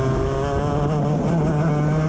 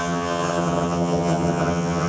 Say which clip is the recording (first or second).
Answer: first